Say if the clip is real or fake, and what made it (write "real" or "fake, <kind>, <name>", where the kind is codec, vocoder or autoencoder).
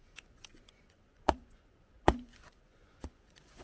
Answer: fake, vocoder, Vocos